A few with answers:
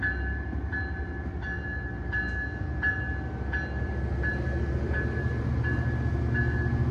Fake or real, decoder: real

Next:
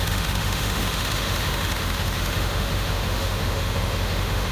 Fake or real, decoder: fake, autoencoder, DAC-VAE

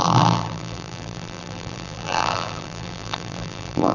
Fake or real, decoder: fake, vocoder, BigVGAN v2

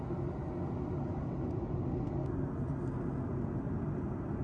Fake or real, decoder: real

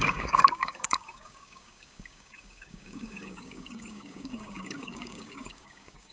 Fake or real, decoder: fake, codec, DAC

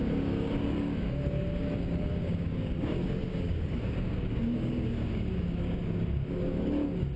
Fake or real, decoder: fake, codec, DAC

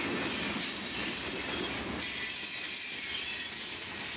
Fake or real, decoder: real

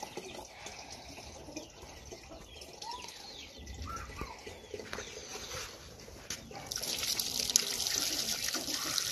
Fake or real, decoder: real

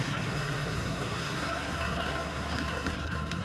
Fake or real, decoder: fake, codec, SNAC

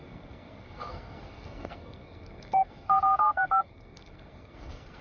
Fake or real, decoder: fake, codec, SNAC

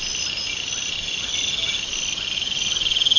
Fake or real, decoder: real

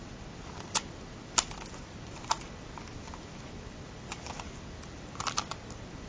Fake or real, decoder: real